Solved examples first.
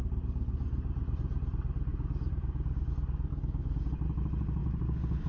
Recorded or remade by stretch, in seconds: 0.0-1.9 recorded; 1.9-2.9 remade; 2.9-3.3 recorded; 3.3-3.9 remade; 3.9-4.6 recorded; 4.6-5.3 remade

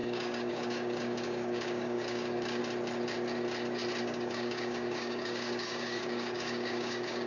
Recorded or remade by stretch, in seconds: 0.0-2.6 remade; 2.6-4.0 recorded; 4.0-7.3 remade

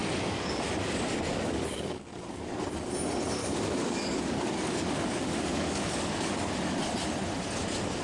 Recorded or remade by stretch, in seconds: 0.0-0.5 remade; 0.5-1.3 recorded; 1.3-2.6 remade; 2.6-3.4 recorded; 3.4-6.4 remade; 6.4-8.0 recorded

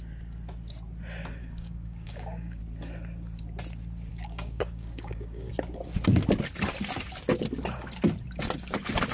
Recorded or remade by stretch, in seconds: 0.0-1.4 recorded; 1.4-2.6 remade; 2.6-4.1 recorded; 4.1-5.5 remade; 5.5-9.1 recorded

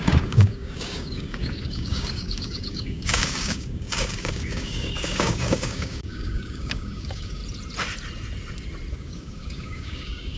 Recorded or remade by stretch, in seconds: 0.0-7.4 remade; 7.4-8.9 recorded; 8.9-10.4 remade

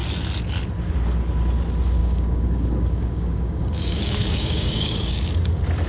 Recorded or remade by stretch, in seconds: 0.0-2.0 recorded; 2.0-5.5 remade; 5.5-5.9 recorded